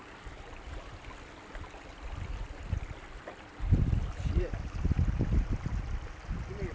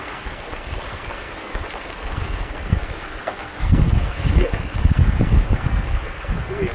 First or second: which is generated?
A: second